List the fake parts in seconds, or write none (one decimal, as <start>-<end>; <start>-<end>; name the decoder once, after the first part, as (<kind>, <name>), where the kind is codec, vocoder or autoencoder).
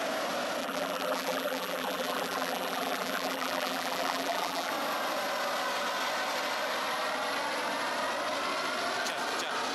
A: 0.6-4.7 (vocoder, BigVGAN v2)